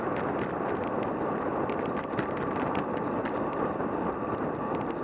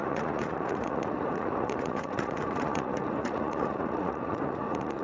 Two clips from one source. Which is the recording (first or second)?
first